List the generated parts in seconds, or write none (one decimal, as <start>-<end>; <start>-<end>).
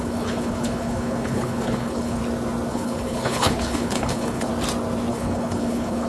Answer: 0.0-2.2; 2.7-4.5; 5.1-6.1